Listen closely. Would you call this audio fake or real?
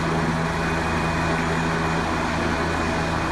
real